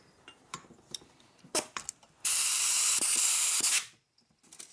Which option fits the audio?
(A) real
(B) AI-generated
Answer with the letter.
B